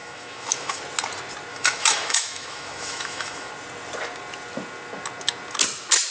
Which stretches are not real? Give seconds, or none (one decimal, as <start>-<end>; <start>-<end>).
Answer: 0.0-0.8; 1.5-3.5